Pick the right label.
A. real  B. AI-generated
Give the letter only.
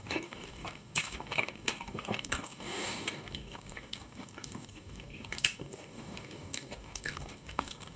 B